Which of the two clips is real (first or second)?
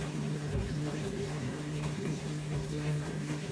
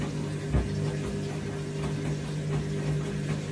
second